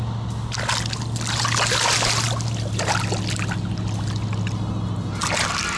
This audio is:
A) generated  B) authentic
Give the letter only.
B